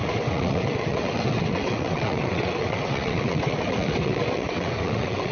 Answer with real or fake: fake